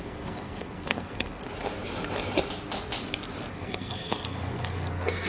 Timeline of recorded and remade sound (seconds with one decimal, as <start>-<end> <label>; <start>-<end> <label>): 0.0-1.4 remade; 1.4-3.5 recorded; 3.5-5.3 remade